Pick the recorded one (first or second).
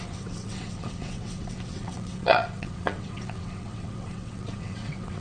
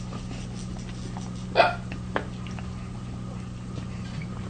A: second